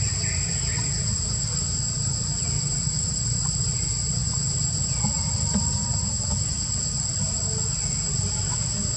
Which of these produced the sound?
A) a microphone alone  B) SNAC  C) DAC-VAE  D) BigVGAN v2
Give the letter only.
A